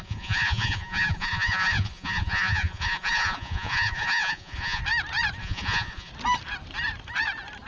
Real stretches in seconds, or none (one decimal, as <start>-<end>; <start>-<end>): 4.8-5.4; 6.1-7.7